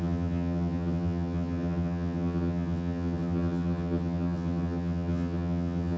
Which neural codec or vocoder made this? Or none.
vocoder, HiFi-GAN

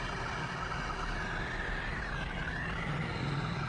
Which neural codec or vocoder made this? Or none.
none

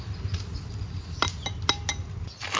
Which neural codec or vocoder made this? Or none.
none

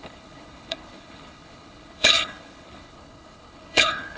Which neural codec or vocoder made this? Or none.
codec, HILCodec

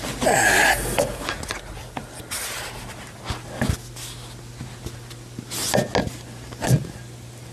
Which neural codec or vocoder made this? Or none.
none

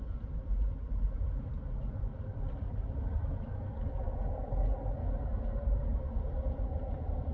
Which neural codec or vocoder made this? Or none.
none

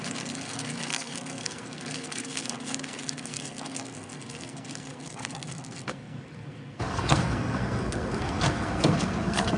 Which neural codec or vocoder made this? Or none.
codec, SNAC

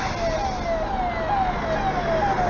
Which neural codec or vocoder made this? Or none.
none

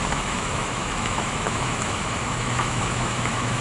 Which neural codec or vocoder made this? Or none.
autoencoder, DAC-VAE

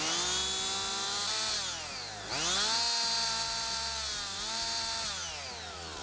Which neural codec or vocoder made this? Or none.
none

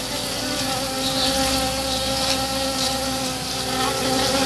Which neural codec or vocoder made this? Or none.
none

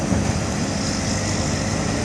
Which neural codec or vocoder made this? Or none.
none